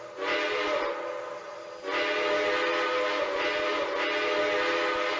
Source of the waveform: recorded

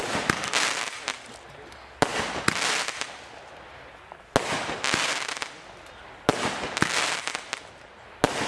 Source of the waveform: recorded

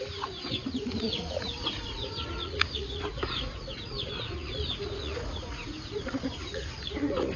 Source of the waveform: remade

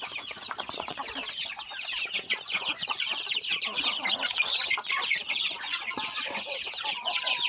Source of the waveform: remade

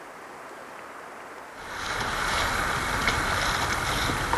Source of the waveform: recorded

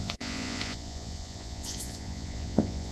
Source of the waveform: remade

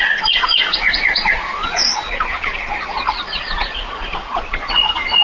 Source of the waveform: remade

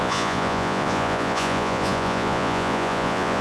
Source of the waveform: remade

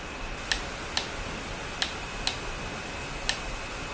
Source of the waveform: recorded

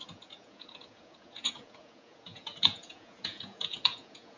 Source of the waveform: remade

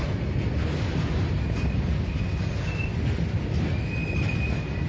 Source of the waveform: recorded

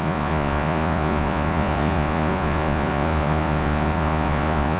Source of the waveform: remade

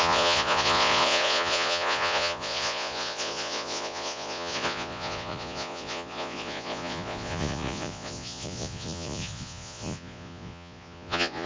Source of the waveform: remade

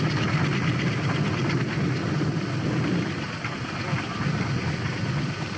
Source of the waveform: recorded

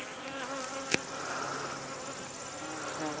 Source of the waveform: recorded